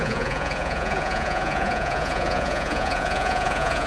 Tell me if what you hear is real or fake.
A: fake